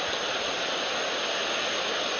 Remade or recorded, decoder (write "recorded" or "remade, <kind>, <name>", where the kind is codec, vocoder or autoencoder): recorded